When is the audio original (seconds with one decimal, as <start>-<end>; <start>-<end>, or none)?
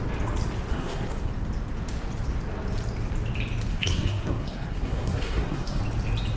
0.0-0.7; 1.3-3.7; 5.8-6.4